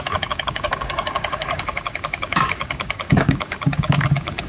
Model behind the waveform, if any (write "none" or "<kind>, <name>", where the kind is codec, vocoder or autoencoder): codec, DAC